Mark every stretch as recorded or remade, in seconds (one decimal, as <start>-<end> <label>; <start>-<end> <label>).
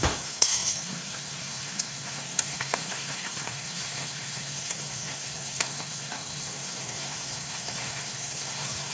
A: 0.0-8.9 remade